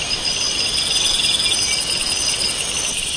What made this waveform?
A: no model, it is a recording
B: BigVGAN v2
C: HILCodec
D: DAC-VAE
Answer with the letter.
A